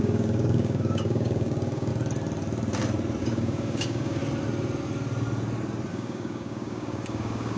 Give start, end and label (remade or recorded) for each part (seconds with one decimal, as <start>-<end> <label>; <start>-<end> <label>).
0.0-1.9 remade; 1.9-3.2 recorded; 3.2-4.2 remade; 4.2-5.9 recorded; 5.9-7.6 remade